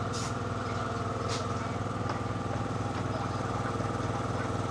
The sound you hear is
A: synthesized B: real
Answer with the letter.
A